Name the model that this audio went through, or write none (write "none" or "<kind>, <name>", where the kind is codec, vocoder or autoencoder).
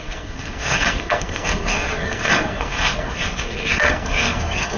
codec, SNAC